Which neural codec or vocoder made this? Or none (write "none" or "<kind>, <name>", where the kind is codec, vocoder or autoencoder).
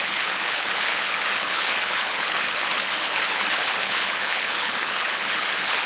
codec, HILCodec